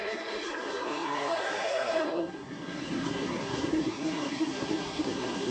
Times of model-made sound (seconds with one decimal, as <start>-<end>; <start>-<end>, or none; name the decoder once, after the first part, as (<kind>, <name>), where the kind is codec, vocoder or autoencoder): 0.0-5.5 (codec, SNAC)